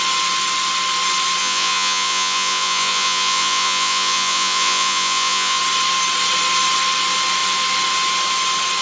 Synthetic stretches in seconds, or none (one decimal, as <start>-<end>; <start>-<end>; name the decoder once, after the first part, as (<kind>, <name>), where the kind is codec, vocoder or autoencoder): 1.4-5.6 (vocoder, Vocos)